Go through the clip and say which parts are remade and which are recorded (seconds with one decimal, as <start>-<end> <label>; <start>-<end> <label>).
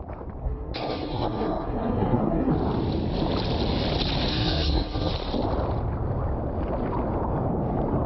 0.0-0.4 recorded; 0.4-2.5 remade; 2.5-4.3 recorded; 4.3-5.1 remade; 5.1-8.1 recorded